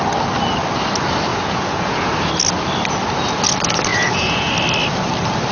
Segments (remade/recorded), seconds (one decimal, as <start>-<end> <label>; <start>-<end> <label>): 0.0-1.3 recorded; 1.3-2.1 remade; 2.1-3.9 recorded; 3.9-4.5 remade; 4.5-5.5 recorded